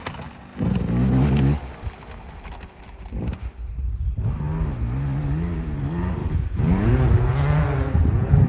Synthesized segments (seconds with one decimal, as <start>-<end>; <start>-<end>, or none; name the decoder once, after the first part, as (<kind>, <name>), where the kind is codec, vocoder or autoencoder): 6.2-6.9 (vocoder, Vocos)

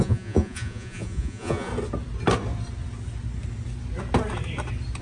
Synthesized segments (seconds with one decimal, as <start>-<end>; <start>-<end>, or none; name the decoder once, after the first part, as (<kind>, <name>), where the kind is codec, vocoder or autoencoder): 0.0-1.7 (vocoder, Vocos)

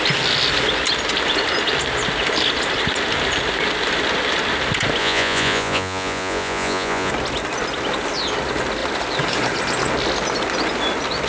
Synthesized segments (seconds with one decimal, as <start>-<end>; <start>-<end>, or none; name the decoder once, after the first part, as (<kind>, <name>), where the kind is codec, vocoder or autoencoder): 5.0-7.1 (vocoder, Vocos)

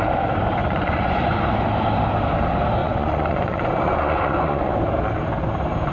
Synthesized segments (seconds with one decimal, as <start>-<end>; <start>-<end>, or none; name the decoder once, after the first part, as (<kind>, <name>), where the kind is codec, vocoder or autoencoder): 0.6-1.4 (vocoder, Vocos); 2.8-4.7

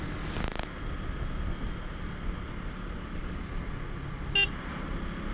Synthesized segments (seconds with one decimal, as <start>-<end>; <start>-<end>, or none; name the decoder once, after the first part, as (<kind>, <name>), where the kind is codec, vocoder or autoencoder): none